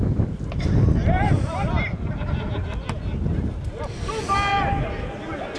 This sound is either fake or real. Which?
real